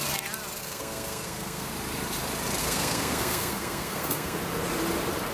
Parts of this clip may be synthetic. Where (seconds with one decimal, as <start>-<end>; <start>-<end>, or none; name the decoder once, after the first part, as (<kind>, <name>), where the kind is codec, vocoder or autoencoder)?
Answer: 0.6-1.7 (codec, SNAC); 2.6-4.4